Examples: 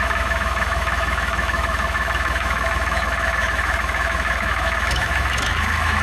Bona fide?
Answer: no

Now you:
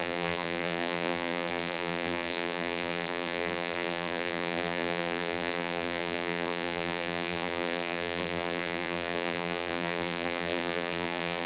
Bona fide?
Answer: no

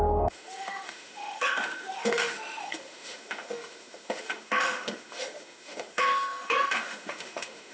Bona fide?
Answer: no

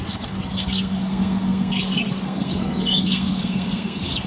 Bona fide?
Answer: no